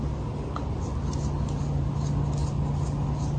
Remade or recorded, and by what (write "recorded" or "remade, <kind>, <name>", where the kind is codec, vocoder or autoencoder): recorded